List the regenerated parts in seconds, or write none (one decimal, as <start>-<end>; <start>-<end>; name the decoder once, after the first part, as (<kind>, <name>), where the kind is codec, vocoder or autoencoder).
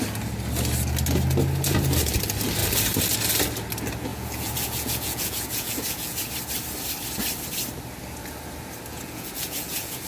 4.1-6.2 (vocoder, Vocos); 8.9-10.1